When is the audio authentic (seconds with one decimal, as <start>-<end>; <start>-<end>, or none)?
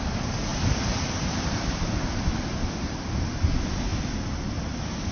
0.0-0.5; 1.9-5.1